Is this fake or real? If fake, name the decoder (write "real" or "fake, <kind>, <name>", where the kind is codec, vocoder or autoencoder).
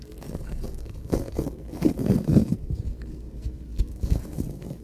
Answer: fake, codec, SNAC